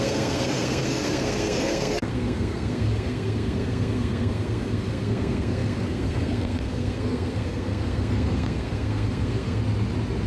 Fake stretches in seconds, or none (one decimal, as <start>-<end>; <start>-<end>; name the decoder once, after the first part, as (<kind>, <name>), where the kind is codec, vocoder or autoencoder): 0.0-9.6 (codec, SNAC)